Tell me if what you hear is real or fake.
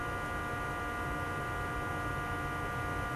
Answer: real